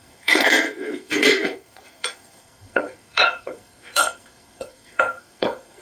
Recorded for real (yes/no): no